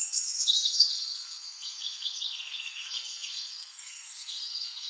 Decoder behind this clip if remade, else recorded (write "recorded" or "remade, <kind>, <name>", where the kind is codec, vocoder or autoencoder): remade, codec, SNAC